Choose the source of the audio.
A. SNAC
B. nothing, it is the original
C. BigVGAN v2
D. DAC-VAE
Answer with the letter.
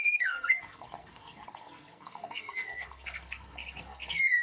A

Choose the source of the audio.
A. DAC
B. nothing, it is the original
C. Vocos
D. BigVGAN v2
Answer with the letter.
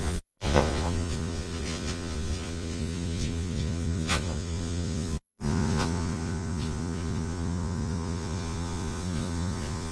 C